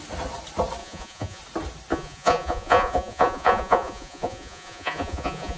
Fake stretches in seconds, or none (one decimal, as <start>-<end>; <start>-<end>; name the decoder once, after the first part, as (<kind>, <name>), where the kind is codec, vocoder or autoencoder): 0.8-1.4 (vocoder, Vocos); 1.9-5.6

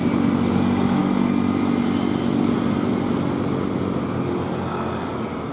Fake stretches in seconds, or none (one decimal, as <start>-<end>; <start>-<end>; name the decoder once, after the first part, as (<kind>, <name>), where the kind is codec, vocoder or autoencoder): none

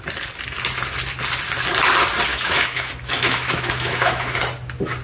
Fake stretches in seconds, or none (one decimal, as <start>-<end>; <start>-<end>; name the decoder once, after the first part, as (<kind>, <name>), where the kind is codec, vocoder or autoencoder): 2.3-4.4 (autoencoder, DAC-VAE)